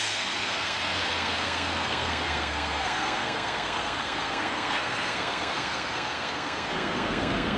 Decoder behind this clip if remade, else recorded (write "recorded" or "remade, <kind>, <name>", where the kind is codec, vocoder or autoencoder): remade, codec, SNAC